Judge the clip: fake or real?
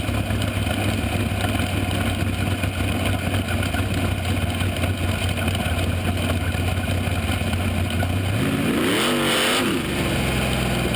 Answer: real